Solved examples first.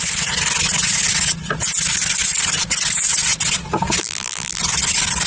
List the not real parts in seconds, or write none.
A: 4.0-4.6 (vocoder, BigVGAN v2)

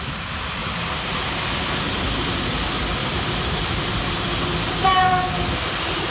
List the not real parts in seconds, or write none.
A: 0.6-1.3 (vocoder, BigVGAN v2); 3.0-3.9